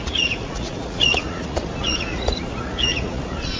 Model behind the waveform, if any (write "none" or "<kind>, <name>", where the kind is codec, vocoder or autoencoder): vocoder, Vocos